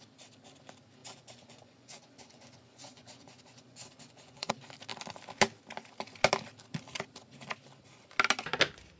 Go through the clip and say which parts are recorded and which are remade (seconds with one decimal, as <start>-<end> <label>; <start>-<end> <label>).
0.0-1.0 recorded; 1.0-4.5 remade; 4.5-9.0 recorded